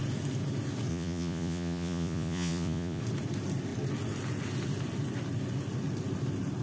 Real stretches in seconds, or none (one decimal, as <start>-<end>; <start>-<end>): 0.0-0.9; 3.0-6.6